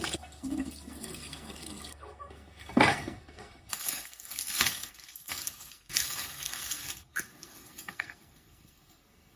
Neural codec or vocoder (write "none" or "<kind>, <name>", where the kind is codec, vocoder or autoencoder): codec, SNAC